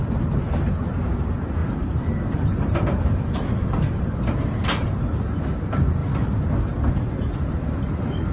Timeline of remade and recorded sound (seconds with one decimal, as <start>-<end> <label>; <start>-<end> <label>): 0.0-1.6 recorded; 1.6-5.4 remade; 5.4-8.3 recorded